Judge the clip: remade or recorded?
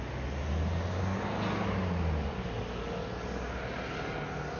recorded